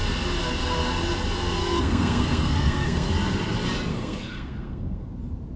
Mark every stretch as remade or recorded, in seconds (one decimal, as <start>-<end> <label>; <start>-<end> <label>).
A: 0.0-1.6 recorded; 1.6-3.1 remade; 3.1-3.9 recorded; 3.9-5.1 remade; 5.1-5.6 recorded